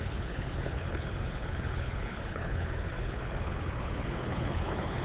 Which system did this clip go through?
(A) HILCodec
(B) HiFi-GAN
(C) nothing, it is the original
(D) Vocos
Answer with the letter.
A